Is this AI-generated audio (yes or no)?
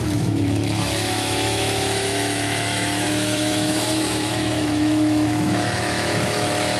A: yes